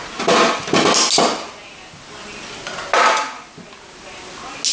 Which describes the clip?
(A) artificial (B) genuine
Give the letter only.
B